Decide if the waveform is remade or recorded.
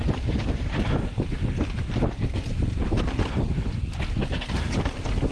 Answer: recorded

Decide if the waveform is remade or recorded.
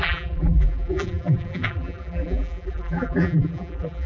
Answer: remade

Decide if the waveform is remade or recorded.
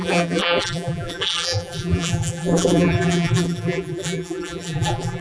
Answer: remade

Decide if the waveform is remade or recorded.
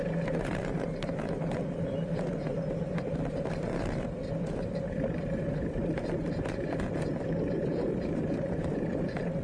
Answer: remade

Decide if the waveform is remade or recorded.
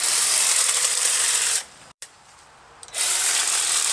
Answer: remade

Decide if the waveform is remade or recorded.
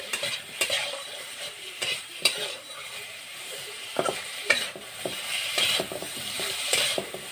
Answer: remade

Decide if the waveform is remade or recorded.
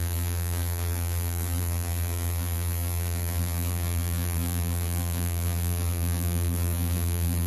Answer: remade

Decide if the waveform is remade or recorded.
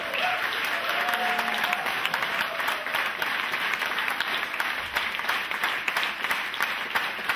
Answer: remade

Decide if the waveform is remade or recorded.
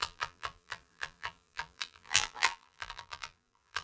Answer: remade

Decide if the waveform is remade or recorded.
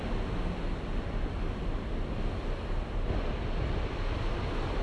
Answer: recorded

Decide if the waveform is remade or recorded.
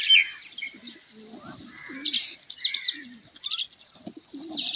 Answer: recorded